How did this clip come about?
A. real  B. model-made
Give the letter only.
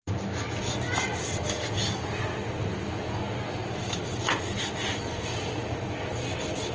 A